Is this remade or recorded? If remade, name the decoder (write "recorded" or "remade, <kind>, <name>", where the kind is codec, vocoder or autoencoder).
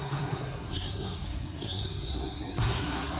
remade, codec, SNAC